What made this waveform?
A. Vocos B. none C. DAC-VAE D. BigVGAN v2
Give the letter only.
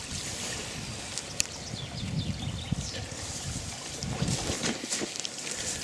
B